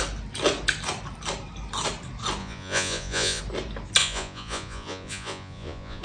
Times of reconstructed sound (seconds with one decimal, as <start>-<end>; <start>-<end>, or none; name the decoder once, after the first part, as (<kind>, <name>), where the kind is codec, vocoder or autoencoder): 2.4-3.4 (vocoder, Vocos); 4.0-6.0